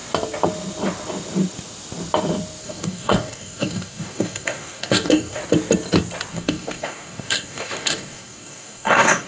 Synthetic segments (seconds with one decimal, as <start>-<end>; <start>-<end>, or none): 2.6-5.4; 6.3-9.3